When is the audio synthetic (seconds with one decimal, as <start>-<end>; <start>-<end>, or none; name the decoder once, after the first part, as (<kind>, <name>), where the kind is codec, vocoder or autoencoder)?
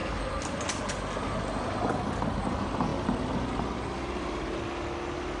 none